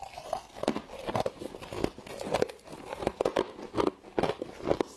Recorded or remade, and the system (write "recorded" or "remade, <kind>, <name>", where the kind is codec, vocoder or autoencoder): recorded